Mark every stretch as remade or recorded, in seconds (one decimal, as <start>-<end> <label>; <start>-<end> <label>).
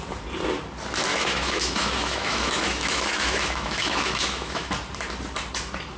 0.0-1.1 recorded; 1.1-4.7 remade; 4.7-6.0 recorded